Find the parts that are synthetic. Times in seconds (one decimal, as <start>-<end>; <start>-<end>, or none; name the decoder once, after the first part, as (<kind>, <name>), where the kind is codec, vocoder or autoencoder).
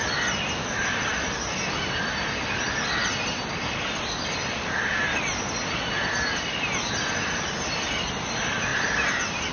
8.7-9.5 (vocoder, BigVGAN v2)